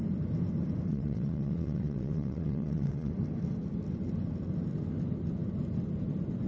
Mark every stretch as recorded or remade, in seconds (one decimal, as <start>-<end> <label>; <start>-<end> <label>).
0.0-0.9 recorded; 0.9-3.1 remade; 3.1-6.5 recorded